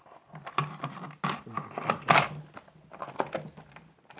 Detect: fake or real real